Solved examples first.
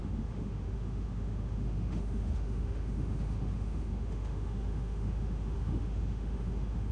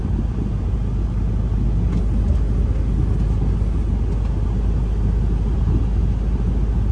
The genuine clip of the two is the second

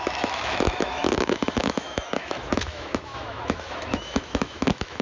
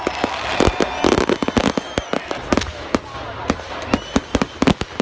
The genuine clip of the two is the second